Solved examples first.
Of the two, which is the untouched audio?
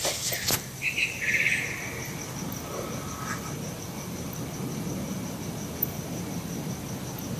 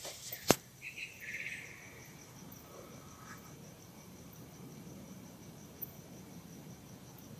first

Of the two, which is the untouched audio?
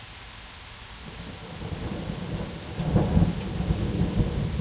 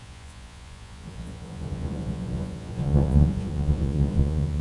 first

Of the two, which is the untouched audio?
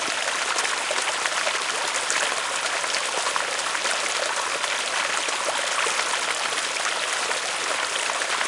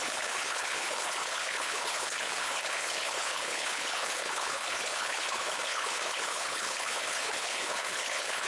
first